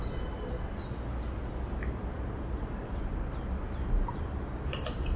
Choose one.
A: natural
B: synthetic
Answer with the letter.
A